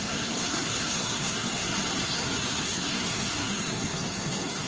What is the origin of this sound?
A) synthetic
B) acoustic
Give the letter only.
A